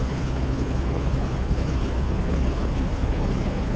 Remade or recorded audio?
remade